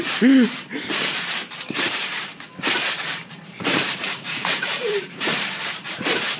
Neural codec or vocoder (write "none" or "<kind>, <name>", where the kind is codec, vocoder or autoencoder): vocoder, BigVGAN v2